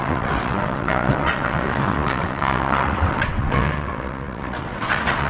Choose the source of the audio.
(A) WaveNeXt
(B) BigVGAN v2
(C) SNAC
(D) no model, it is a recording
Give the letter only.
A